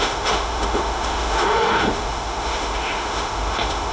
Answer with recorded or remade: remade